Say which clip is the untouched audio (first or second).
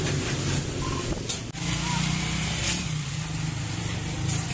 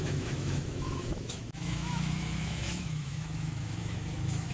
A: first